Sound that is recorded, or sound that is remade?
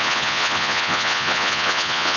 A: remade